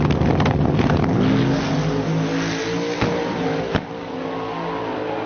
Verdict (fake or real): real